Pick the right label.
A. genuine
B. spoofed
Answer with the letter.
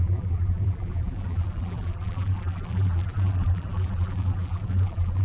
B